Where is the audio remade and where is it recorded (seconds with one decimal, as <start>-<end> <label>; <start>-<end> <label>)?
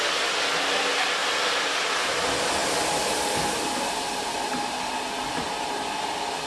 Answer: 0.0-6.5 recorded